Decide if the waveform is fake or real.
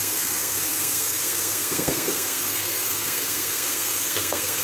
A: fake